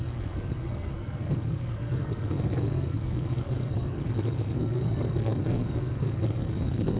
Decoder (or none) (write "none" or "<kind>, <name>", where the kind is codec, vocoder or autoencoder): codec, SNAC